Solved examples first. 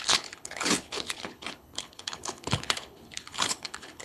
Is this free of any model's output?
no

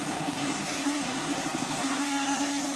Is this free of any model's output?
no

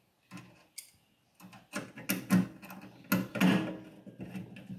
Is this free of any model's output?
yes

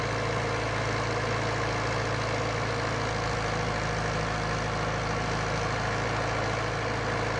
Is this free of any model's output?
yes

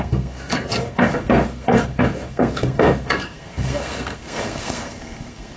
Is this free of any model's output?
no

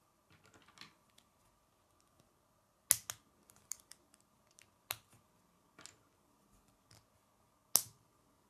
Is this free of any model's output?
yes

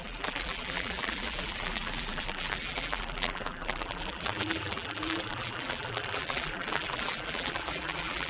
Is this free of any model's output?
no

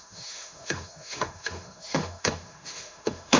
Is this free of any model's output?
no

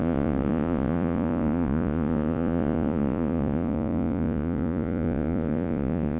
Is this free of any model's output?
no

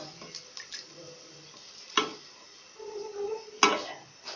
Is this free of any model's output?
yes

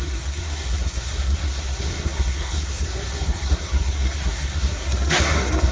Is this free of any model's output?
no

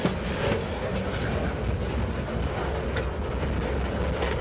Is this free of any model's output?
yes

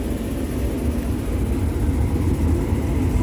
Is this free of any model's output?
yes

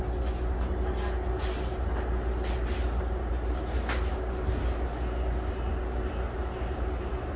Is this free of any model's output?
yes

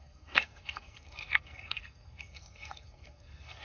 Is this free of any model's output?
no